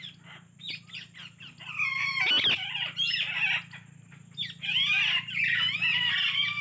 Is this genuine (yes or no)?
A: yes